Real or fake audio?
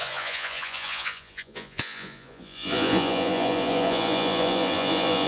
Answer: fake